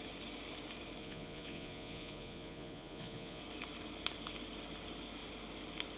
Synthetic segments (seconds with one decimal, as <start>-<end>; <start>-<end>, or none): 1.0-3.4

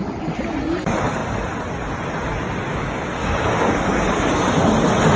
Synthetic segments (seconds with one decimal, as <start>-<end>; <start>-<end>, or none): 2.7-4.5

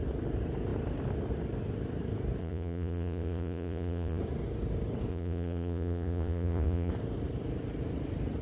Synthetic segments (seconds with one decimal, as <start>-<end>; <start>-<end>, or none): 2.4-4.2; 5.1-6.9

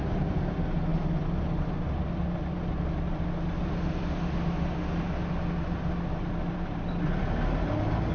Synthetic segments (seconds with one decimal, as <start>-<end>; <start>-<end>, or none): none

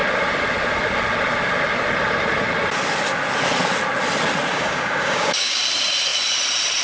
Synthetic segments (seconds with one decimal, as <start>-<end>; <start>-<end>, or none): 4.5-5.6

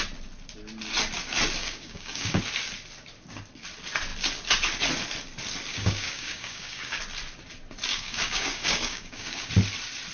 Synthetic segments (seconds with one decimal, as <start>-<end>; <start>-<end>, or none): 1.6-2.4; 5.7-7.0; 7.9-9.5

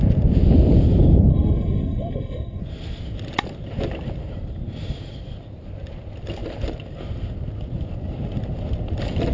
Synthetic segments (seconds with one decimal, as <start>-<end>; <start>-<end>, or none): 1.3-2.6